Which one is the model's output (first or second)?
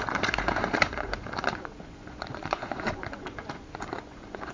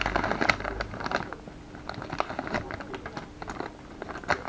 first